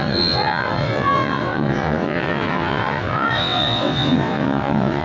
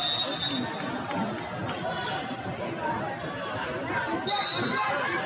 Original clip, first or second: second